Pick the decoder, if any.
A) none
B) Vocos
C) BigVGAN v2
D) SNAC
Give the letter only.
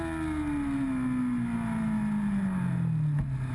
A